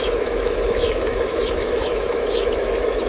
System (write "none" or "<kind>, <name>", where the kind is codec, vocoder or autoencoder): autoencoder, DAC-VAE